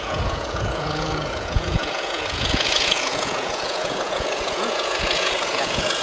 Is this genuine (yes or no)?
no